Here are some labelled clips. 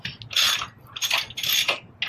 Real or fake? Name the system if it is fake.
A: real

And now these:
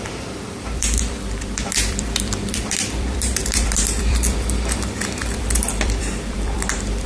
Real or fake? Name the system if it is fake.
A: fake, vocoder, BigVGAN v2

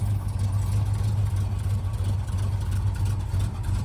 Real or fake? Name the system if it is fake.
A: real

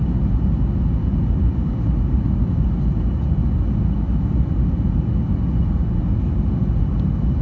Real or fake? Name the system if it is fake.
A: real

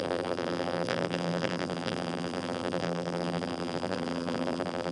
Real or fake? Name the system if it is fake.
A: fake, vocoder, BigVGAN v2